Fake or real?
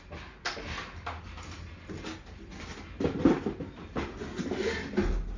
real